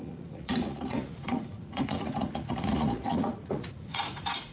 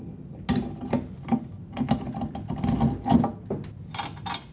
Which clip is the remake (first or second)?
first